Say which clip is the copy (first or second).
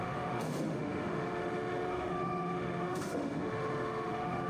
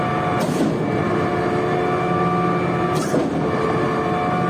first